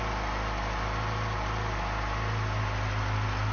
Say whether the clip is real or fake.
real